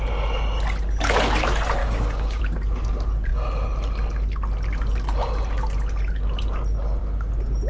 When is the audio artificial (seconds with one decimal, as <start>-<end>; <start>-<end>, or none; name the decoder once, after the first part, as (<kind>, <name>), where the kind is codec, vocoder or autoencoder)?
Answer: 1.8-2.4 (codec, DAC)